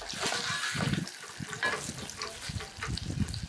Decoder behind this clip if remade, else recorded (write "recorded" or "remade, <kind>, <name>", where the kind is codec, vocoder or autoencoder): recorded